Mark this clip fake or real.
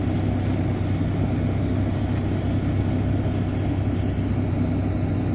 real